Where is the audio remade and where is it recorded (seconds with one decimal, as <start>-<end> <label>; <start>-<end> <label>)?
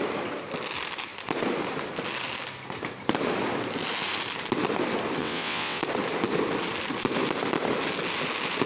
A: 0.0-5.2 recorded; 5.2-5.8 remade; 5.8-8.7 recorded